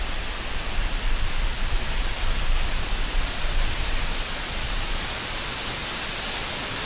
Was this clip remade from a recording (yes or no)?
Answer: no